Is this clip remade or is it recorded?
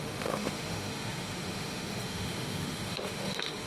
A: remade